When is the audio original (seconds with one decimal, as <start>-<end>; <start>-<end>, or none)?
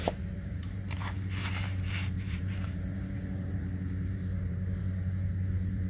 none